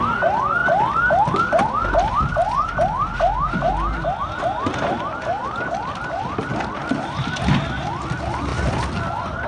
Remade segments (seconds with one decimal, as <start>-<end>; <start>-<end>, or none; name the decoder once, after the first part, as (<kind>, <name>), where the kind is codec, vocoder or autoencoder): none